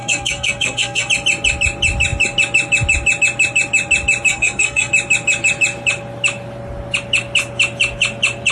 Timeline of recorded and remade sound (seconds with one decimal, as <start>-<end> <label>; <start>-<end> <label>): 0.0-1.1 remade; 1.1-4.3 recorded; 4.3-4.9 remade; 4.9-8.5 recorded